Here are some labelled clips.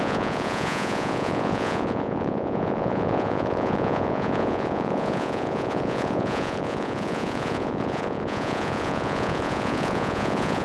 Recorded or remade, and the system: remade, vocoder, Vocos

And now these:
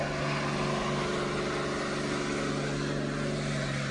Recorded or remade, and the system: recorded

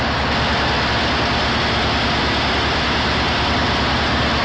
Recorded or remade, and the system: recorded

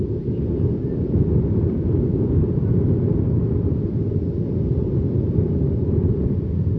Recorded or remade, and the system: recorded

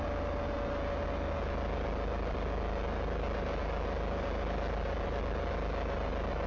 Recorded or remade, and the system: recorded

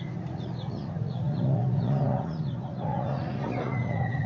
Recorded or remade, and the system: remade, vocoder, Vocos